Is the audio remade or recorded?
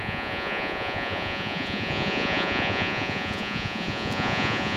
remade